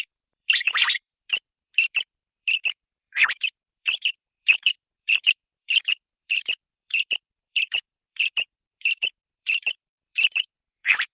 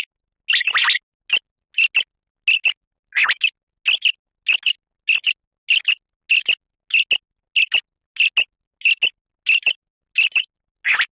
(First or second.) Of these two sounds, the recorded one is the second